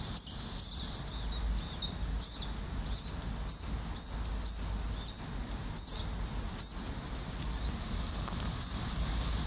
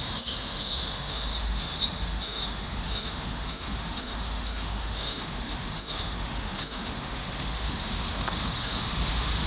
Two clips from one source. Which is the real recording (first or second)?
first